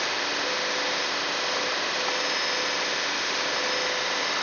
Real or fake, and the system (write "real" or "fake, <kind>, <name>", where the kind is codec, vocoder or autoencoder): real